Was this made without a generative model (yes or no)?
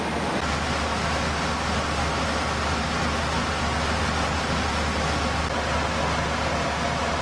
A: yes